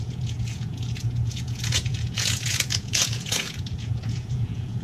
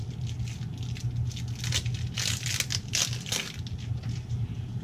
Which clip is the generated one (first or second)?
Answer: first